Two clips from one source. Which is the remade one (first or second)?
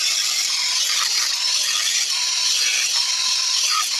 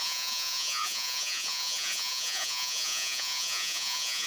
second